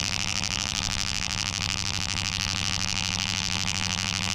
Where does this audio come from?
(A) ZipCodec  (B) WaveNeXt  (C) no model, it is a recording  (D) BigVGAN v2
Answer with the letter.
D